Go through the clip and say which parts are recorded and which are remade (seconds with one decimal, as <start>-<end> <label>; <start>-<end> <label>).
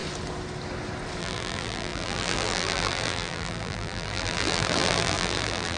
0.0-1.2 recorded; 1.2-5.8 remade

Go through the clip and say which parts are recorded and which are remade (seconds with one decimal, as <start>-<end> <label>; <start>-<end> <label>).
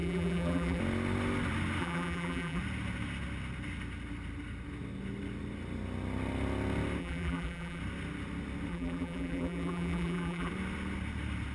0.0-0.8 remade; 0.8-1.8 recorded; 1.8-2.6 remade; 2.6-7.0 recorded; 7.0-7.8 remade; 7.8-8.7 recorded; 8.7-10.5 remade; 10.5-11.5 recorded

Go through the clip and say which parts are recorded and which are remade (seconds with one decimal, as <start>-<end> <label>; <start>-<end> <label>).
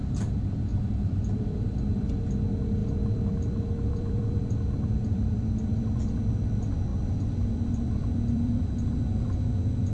0.0-0.7 recorded; 0.7-2.1 remade; 2.1-2.8 recorded; 2.8-5.8 remade; 5.8-6.9 recorded; 6.9-8.7 remade; 8.7-9.9 recorded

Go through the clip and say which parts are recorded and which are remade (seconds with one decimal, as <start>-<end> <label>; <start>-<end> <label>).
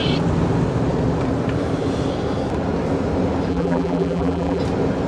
0.0-3.5 recorded; 3.5-4.6 remade; 4.6-5.1 recorded